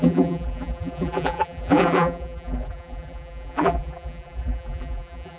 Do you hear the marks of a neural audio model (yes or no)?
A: yes